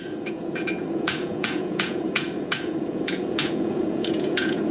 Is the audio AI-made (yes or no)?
yes